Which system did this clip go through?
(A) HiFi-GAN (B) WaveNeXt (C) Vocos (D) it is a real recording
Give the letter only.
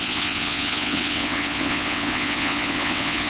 B